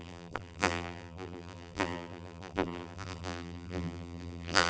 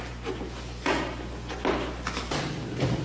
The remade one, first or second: first